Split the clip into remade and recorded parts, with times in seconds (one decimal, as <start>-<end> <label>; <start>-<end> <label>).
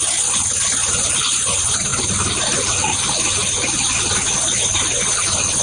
0.0-1.9 recorded; 1.9-2.9 remade; 2.9-5.6 recorded